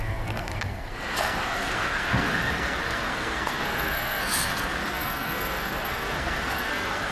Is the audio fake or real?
fake